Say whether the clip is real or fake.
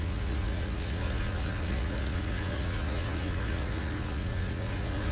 fake